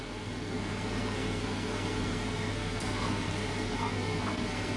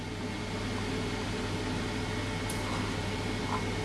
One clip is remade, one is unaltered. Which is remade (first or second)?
first